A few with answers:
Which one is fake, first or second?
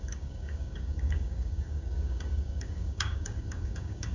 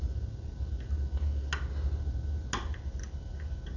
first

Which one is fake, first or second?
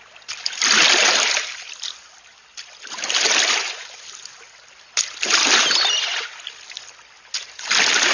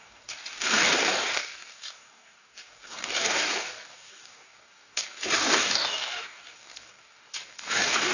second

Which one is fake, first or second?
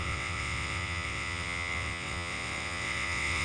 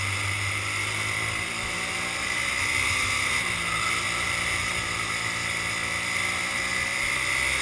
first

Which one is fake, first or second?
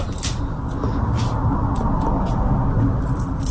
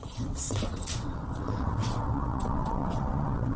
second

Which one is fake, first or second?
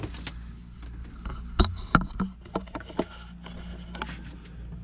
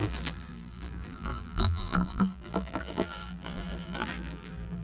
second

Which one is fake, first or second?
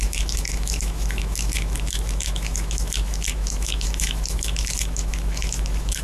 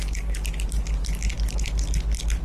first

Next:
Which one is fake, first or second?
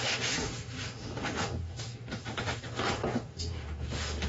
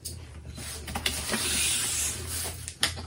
first